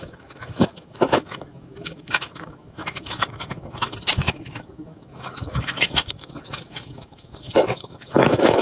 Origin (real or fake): fake